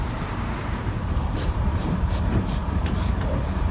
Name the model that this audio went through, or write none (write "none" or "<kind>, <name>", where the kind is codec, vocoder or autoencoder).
vocoder, BigVGAN v2